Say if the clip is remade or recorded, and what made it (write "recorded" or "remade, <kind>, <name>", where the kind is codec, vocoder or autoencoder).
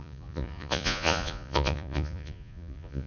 remade, vocoder, Vocos